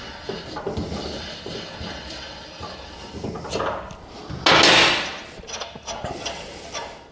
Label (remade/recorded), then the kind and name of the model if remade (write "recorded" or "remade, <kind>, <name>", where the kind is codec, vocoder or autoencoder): recorded